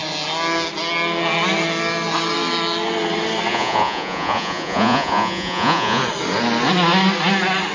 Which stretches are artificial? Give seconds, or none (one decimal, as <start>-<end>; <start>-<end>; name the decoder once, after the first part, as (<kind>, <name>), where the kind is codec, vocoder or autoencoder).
3.5-6.0 (vocoder, Vocos)